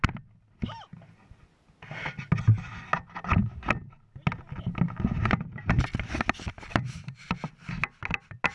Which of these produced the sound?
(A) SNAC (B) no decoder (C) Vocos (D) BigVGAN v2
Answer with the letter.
B